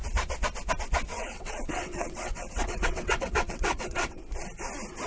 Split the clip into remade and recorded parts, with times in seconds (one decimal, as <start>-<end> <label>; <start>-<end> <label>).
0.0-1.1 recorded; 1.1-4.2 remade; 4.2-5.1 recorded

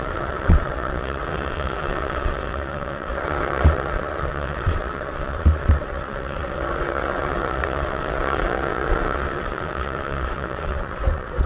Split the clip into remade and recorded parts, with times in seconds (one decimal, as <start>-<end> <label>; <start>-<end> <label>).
0.0-11.5 remade

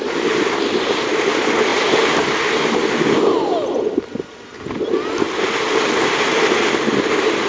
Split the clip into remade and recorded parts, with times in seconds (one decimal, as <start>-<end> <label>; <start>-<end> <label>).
0.0-7.5 recorded